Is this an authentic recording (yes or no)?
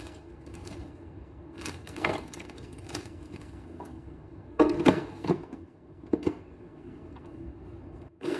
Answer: no